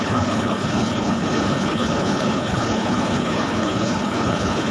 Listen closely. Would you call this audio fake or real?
fake